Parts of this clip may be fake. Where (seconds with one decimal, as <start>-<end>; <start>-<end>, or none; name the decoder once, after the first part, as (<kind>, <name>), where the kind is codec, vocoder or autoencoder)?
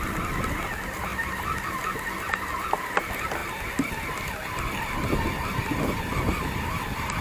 none